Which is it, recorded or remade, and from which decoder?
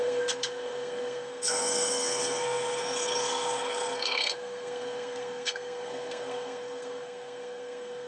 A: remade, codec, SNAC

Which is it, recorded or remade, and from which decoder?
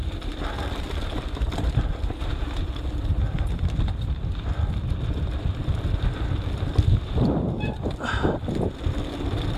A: recorded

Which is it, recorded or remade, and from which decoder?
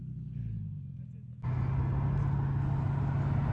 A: recorded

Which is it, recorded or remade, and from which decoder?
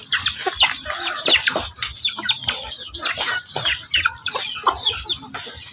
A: recorded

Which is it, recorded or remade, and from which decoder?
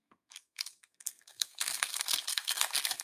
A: remade, codec, SNAC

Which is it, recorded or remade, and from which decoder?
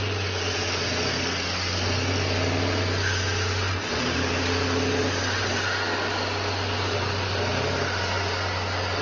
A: recorded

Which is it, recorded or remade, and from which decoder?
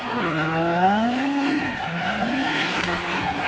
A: remade, codec, SNAC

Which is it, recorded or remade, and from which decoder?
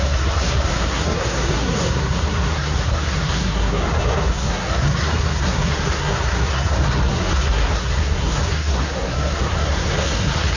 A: remade, codec, SNAC